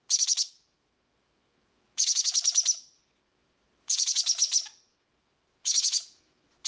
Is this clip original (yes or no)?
no